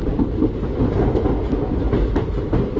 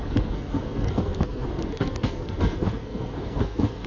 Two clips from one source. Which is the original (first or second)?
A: first